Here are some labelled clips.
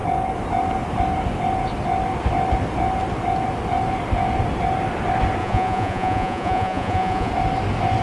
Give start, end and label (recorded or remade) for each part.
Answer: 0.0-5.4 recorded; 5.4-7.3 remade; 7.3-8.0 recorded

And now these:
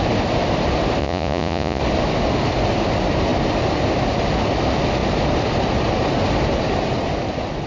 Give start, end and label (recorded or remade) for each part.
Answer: 0.0-1.0 recorded; 1.0-1.8 remade; 1.8-7.7 recorded

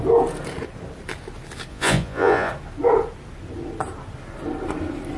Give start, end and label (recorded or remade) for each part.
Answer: 0.0-1.7 recorded; 1.7-2.5 remade; 2.5-5.2 recorded

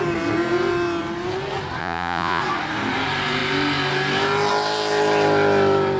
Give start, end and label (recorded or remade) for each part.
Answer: 0.0-1.8 recorded; 1.8-2.4 remade; 2.4-6.0 recorded

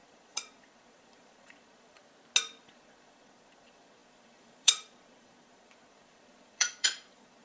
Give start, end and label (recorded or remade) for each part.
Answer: 0.0-2.0 remade; 2.0-2.6 recorded; 2.6-7.4 remade

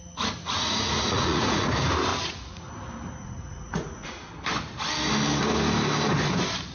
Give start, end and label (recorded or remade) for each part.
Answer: 0.0-0.4 recorded; 0.4-1.7 remade; 1.7-2.1 recorded; 2.1-2.7 remade; 2.7-3.2 recorded; 3.2-4.1 remade; 4.1-6.7 recorded